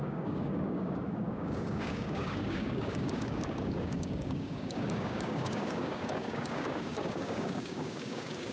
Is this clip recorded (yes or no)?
no